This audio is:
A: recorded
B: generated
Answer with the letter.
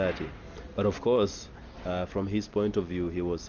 A